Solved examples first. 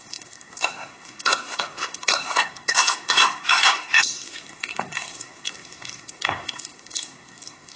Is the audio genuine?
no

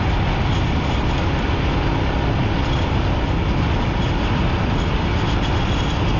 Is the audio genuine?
yes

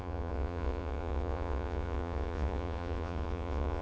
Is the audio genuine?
no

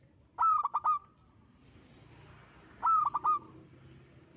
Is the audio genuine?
yes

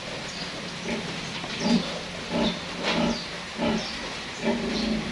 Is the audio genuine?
yes